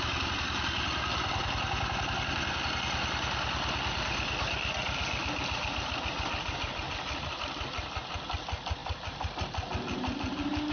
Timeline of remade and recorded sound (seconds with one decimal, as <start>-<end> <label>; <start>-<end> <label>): 0.0-10.7 recorded